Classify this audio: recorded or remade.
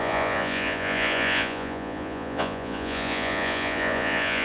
remade